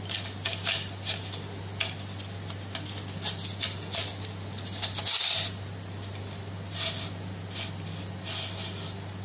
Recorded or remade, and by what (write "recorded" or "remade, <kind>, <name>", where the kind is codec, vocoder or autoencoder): recorded